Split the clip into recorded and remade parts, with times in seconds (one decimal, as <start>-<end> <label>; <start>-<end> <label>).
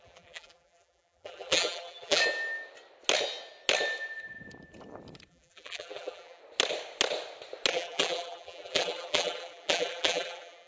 0.0-2.2 remade; 2.2-5.3 recorded; 5.3-6.4 remade; 6.4-7.7 recorded; 7.7-10.7 remade